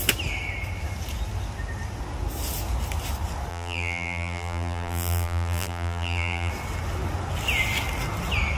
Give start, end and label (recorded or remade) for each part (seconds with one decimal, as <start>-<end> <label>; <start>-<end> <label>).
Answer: 0.0-3.5 recorded; 3.5-6.5 remade; 6.5-8.6 recorded

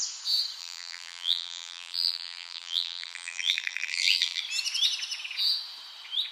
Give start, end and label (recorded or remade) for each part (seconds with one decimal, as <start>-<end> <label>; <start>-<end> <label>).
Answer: 0.0-0.6 recorded; 0.6-4.4 remade; 4.4-6.3 recorded

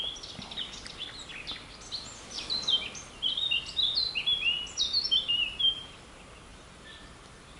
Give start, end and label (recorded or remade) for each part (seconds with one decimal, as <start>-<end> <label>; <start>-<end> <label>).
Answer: 0.0-6.5 recorded; 6.5-7.1 remade; 7.1-7.6 recorded

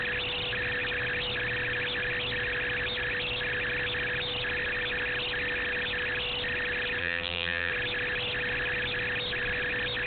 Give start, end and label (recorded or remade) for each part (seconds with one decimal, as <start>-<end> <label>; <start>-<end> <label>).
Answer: 0.0-7.0 recorded; 7.0-7.7 remade; 7.7-10.1 recorded

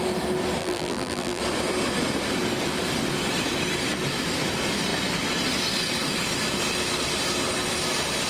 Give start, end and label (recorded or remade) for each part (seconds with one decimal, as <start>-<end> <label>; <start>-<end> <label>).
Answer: 0.0-0.6 recorded; 0.6-1.4 remade; 1.4-8.3 recorded

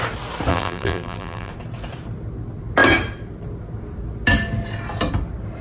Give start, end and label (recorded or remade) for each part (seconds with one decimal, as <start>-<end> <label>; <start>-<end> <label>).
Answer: 0.0-0.5 recorded; 0.5-1.5 remade; 1.5-5.6 recorded